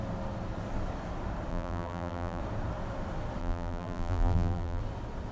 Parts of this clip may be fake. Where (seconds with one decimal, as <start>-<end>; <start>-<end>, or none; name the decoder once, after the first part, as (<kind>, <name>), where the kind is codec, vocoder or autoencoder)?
1.5-2.4 (vocoder, BigVGAN v2); 3.4-4.8